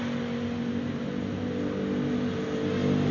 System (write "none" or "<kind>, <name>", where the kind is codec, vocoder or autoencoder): none